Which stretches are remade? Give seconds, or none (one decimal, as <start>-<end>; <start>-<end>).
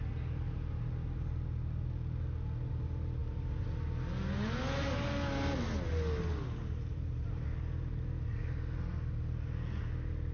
none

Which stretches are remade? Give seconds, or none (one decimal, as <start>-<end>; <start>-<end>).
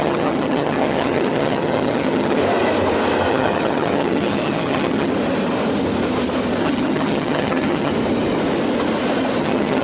0.0-2.4; 3.3-5.1; 6.6-7.9; 9.4-9.8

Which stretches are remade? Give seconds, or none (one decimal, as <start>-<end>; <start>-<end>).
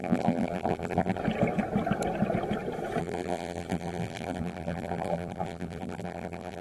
0.0-1.2; 3.0-6.6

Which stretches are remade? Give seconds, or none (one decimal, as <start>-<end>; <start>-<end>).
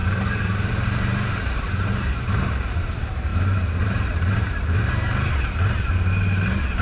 0.0-2.5; 3.3-4.9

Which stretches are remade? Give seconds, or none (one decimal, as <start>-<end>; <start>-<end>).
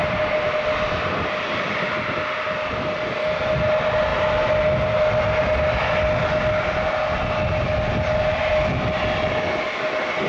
0.0-3.1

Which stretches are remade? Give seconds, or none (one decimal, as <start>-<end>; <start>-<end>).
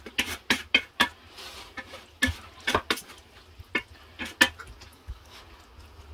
4.9-5.4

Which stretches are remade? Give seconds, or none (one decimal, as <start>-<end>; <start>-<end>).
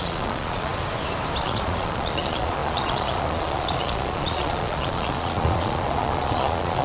0.0-0.7; 1.4-6.8